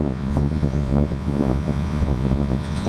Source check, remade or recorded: remade